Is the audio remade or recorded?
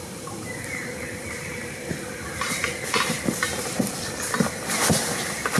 recorded